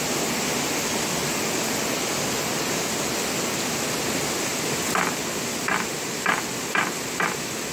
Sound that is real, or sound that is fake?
real